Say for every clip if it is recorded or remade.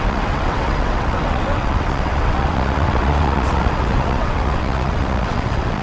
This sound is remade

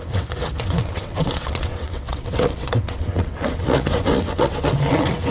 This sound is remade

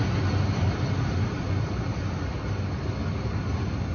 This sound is recorded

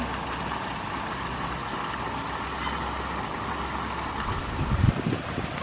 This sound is recorded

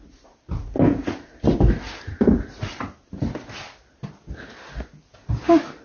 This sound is recorded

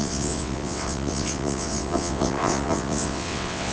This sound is remade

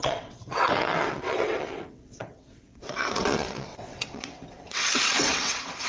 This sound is remade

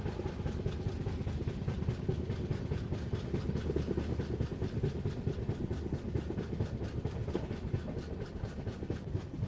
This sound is recorded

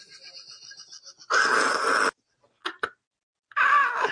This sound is recorded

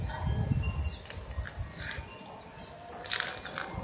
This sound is recorded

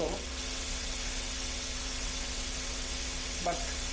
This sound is remade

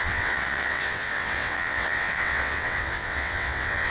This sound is remade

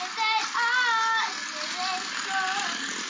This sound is recorded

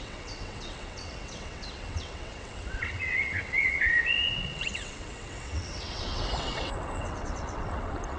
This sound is remade